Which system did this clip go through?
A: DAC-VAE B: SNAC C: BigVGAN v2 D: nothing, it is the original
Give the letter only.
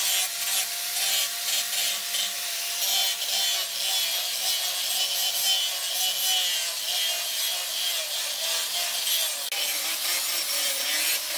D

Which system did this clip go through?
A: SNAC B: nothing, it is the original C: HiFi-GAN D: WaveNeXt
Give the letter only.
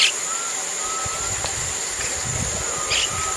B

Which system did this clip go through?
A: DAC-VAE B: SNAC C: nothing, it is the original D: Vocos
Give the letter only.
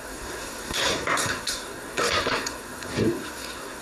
B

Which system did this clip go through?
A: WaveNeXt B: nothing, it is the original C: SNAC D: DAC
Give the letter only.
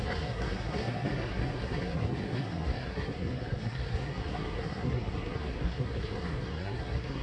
C